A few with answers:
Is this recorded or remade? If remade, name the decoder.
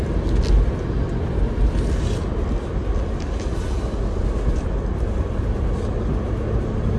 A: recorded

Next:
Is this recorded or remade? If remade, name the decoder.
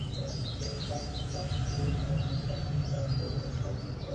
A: recorded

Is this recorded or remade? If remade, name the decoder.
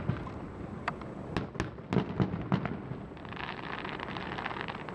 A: recorded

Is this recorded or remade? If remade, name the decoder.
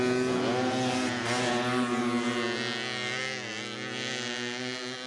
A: recorded